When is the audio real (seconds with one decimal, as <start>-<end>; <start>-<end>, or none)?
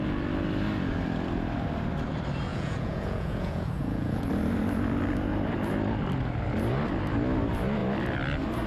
0.0-2.5; 4.3-8.7